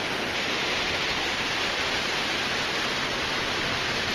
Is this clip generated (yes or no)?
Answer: yes